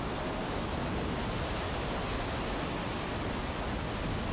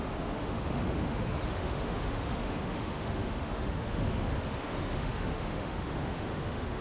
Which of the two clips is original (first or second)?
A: first